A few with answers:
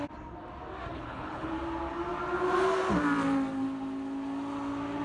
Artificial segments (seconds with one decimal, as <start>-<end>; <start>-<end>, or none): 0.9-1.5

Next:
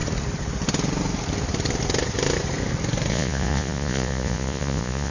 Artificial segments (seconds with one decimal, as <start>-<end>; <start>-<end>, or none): 3.1-5.1

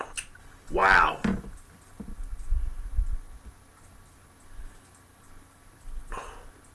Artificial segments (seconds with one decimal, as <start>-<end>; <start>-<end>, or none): none

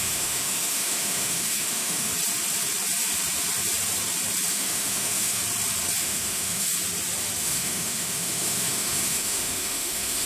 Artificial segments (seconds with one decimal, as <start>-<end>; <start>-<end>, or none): 0.0-2.1; 4.5-5.4; 6.0-6.7; 7.4-10.3